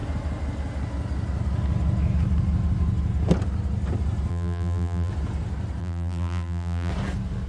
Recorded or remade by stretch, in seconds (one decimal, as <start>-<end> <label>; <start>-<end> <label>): 0.0-4.3 recorded; 4.3-5.1 remade; 5.1-5.8 recorded; 5.8-6.9 remade; 6.9-7.5 recorded